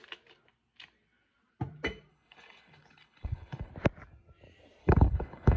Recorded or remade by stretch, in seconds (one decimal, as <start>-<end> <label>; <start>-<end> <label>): 0.0-2.1 recorded; 2.1-3.7 remade; 3.7-4.8 recorded; 4.8-5.6 remade